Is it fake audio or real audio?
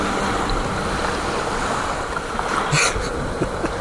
real